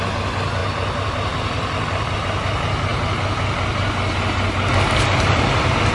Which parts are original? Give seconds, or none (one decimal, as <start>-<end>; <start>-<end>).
0.0-5.9